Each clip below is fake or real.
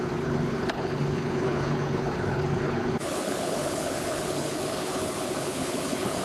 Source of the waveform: fake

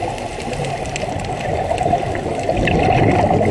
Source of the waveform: real